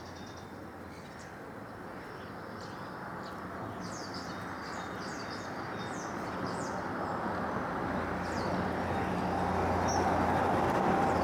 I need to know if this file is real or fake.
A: real